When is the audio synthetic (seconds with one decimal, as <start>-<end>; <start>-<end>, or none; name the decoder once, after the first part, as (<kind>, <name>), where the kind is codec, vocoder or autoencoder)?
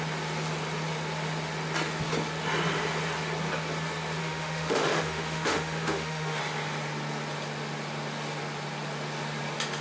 4.2-6.4 (autoencoder, DAC-VAE)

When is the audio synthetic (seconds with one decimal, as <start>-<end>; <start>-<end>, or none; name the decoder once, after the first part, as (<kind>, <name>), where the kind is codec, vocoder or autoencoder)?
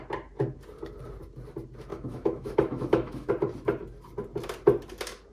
1.9-3.3 (autoencoder, DAC-VAE)